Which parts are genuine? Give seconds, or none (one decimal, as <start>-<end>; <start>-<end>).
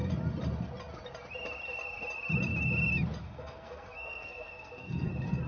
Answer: 0.0-3.2; 5.1-5.5